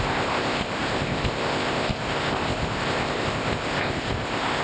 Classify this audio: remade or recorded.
remade